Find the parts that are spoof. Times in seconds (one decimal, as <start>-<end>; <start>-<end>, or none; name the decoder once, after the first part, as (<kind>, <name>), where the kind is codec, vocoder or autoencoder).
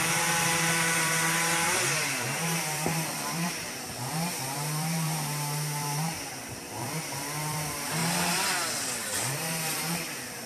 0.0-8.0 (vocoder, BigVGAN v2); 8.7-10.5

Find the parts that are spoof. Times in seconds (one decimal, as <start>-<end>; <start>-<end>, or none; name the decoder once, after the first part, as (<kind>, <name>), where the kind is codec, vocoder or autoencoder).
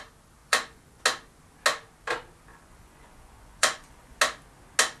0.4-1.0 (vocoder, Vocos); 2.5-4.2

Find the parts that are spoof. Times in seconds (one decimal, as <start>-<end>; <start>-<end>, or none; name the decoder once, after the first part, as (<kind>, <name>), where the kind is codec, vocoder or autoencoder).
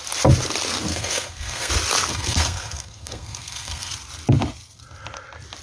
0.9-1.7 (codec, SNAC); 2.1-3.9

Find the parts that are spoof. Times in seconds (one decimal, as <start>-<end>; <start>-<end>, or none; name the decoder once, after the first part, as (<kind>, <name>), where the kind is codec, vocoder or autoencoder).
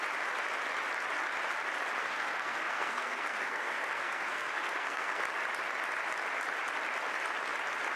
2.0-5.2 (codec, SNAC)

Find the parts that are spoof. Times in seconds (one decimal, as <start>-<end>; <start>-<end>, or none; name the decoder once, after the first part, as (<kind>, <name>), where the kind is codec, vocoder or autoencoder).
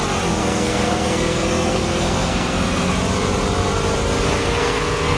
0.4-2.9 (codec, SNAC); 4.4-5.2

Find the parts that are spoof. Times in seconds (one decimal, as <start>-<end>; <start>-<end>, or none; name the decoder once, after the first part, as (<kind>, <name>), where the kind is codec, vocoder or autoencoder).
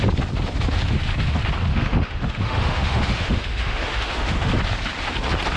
1.7-4.5 (autoencoder, DAC-VAE)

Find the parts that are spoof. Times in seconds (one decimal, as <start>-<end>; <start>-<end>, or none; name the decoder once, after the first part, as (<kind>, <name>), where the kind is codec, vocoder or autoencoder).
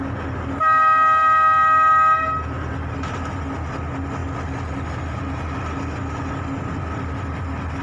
none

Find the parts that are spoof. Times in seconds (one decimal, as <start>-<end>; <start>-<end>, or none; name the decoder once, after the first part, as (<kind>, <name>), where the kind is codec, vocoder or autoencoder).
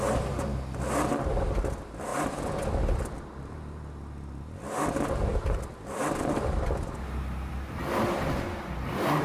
2.1-3.5 (vocoder, BigVGAN v2); 5.3-7.5